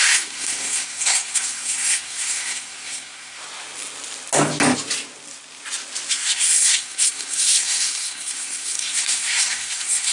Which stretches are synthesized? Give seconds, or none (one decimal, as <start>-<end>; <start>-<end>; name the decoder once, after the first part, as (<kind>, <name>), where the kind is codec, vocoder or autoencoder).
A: 0.0-3.4 (codec, SNAC); 6.1-10.1